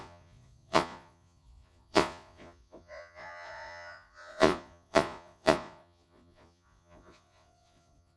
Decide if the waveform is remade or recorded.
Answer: remade